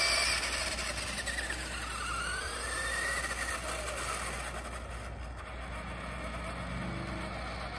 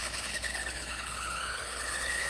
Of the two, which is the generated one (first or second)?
second